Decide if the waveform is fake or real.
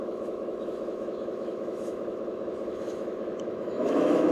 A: fake